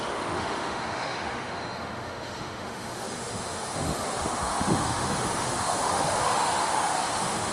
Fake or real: fake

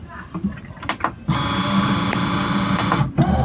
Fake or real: real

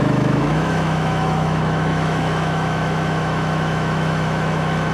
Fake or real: fake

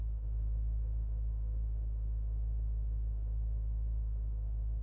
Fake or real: fake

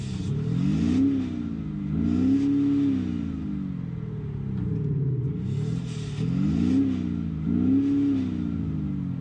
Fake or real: real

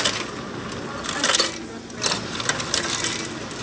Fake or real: real